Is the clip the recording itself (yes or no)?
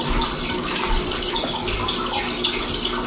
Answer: yes